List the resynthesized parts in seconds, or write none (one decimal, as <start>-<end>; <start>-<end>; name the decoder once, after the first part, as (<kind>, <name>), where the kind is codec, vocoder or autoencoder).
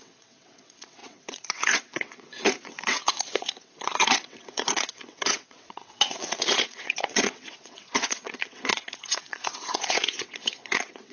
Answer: 0.0-11.1 (vocoder, WaveNeXt)